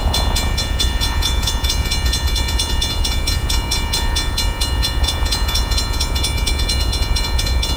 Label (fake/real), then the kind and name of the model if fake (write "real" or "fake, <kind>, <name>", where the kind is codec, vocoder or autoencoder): fake, vocoder, Vocos